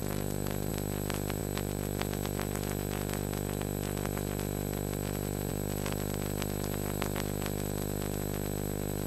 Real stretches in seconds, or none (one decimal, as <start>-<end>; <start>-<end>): 0.7-9.1